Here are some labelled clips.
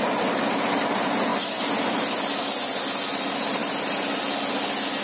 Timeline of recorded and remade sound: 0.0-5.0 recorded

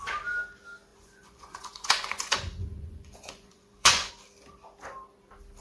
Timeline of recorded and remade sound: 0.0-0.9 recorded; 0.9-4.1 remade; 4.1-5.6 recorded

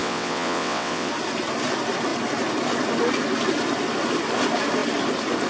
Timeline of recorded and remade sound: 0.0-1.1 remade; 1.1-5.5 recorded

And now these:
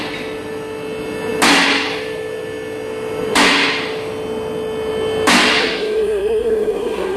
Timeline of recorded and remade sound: 0.0-5.6 recorded; 5.6-7.2 remade

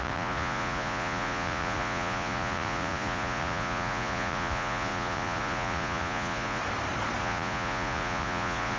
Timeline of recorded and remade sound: 0.0-6.6 remade; 6.6-7.2 recorded; 7.2-8.8 remade